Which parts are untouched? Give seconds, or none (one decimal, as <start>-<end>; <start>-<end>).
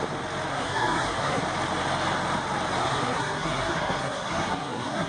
0.0-0.5; 1.4-2.8